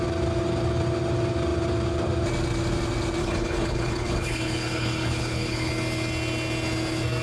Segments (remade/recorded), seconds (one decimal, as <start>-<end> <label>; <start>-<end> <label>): 0.0-3.2 recorded; 3.2-5.7 remade; 5.7-7.2 recorded